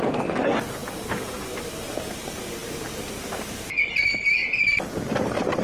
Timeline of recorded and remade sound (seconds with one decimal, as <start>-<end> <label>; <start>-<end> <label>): 0.0-5.6 recorded